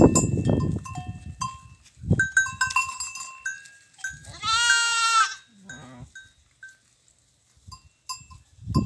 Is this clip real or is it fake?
real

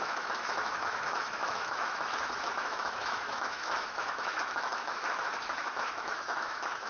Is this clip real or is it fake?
fake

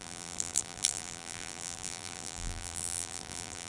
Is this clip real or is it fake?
fake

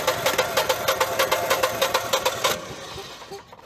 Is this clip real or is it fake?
real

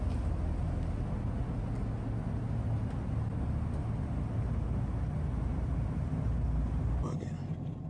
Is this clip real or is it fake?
real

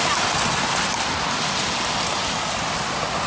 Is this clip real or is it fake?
real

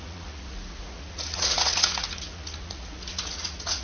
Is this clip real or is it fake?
fake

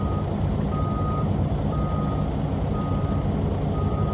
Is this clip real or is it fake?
real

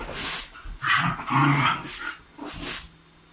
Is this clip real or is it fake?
real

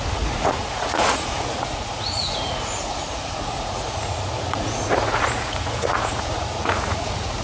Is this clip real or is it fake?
fake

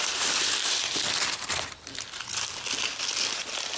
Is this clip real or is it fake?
real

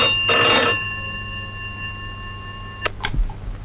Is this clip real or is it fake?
real